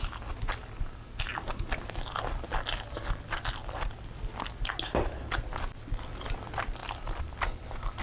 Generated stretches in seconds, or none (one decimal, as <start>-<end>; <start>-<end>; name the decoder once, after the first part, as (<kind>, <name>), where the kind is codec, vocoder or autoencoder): none